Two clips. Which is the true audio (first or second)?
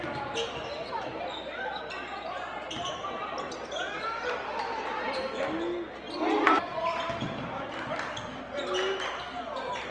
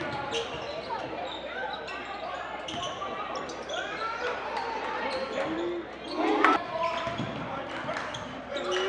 first